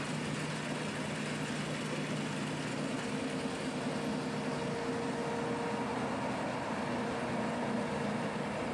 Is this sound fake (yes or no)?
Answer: no